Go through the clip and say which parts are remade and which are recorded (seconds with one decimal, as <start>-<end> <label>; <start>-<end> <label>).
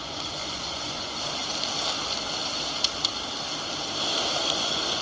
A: 0.0-1.4 remade; 1.4-4.4 recorded; 4.4-5.0 remade